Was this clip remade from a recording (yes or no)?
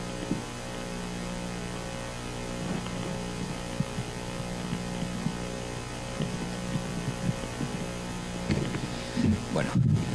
no